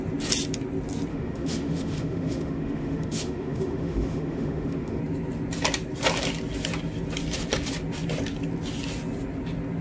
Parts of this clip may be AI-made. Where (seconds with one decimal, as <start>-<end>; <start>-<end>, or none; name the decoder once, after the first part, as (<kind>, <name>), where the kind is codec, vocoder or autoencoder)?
1.1-5.0 (autoencoder, DAC-VAE)